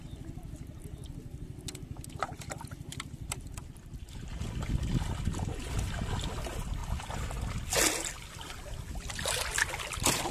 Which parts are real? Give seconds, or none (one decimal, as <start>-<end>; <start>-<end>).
0.0-10.3